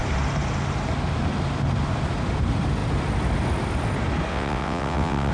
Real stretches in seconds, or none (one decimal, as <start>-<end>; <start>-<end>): 0.0-4.3